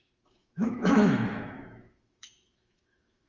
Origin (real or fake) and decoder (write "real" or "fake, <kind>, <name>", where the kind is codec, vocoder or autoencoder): fake, autoencoder, DAC-VAE